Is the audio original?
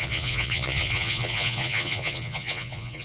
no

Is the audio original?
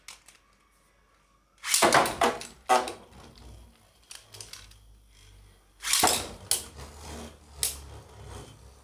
yes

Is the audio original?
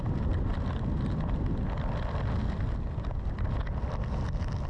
yes